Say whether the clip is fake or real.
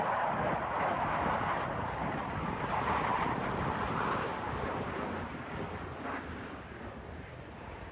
real